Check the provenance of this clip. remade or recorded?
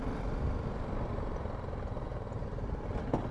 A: recorded